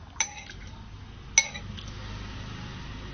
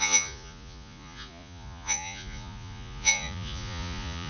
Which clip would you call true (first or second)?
first